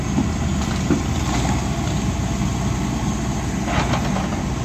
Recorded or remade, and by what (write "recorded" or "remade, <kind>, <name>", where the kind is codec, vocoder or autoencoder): recorded